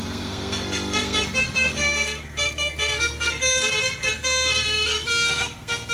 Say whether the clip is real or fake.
fake